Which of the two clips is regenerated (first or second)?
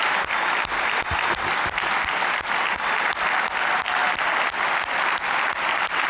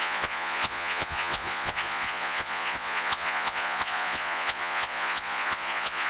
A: second